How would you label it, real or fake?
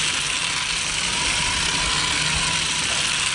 real